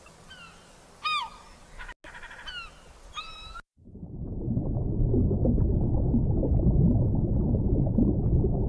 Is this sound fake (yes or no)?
no